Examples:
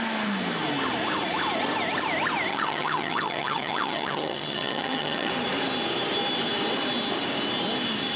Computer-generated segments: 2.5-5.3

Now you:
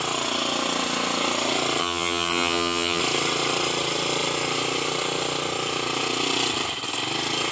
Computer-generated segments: 1.8-3.0

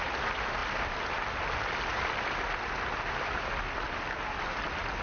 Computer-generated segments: none

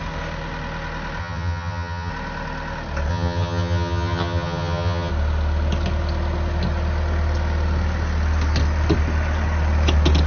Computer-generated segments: 1.2-2.1; 3.1-5.1

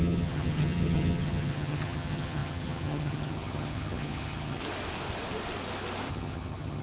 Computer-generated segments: 0.0-4.6; 6.1-6.8